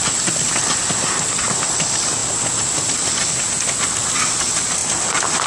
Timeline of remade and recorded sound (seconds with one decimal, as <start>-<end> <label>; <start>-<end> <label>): 0.0-5.5 recorded